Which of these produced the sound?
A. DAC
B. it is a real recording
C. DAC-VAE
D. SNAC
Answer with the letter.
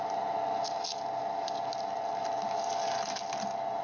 B